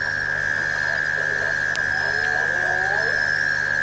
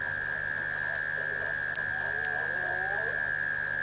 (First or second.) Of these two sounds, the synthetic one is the second